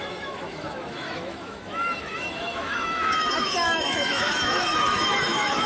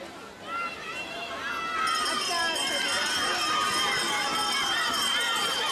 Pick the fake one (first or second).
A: first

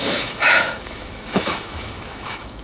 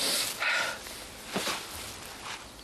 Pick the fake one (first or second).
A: first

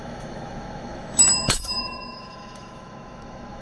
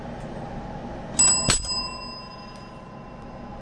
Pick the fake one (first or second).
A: first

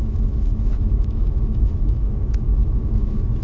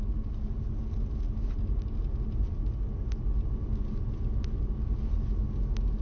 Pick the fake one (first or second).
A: first